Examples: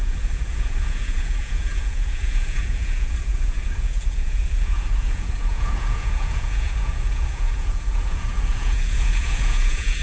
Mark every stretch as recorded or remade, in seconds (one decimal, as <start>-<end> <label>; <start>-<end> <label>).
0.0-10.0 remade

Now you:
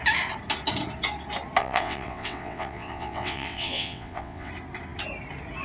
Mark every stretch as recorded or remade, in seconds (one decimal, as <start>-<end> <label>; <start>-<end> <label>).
0.0-1.6 recorded; 1.6-4.5 remade; 4.5-5.6 recorded

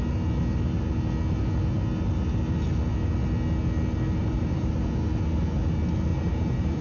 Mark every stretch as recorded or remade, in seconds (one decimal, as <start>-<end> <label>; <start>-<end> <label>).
0.0-4.2 recorded; 4.2-4.7 remade; 4.7-6.1 recorded; 6.1-6.8 remade

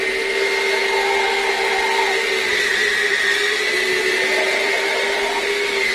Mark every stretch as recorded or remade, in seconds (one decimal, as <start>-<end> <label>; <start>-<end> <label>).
0.0-2.7 recorded; 2.7-4.7 remade; 4.7-5.9 recorded

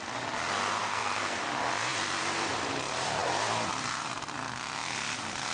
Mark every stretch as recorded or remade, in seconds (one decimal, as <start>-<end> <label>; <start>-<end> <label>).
0.0-0.8 recorded; 0.8-1.4 remade; 1.4-5.5 recorded